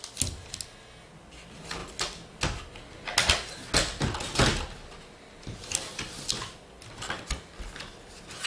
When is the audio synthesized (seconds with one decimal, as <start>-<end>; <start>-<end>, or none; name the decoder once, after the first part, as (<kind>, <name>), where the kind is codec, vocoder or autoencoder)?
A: none